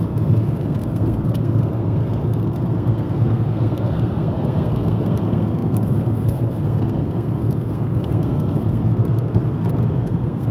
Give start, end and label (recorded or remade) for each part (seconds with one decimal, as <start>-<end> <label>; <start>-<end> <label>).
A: 0.0-10.5 remade